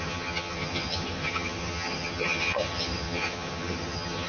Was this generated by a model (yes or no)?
yes